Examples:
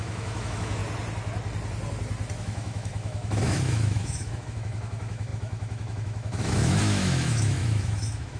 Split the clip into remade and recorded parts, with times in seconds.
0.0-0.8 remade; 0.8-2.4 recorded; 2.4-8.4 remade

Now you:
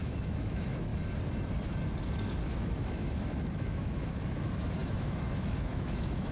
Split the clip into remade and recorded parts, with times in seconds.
0.0-0.9 remade; 0.9-2.5 recorded; 2.5-6.3 remade